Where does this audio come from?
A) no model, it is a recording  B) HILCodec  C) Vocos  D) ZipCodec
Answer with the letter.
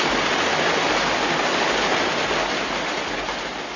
A